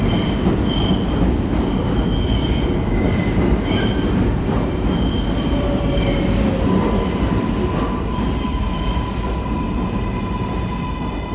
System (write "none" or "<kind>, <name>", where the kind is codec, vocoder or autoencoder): none